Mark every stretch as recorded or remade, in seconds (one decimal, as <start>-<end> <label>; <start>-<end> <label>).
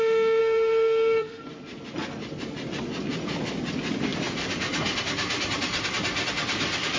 0.0-0.4 recorded; 0.4-1.4 remade; 1.4-7.0 recorded